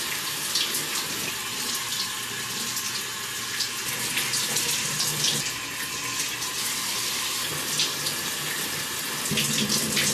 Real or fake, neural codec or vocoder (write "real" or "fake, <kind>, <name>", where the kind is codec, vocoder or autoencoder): real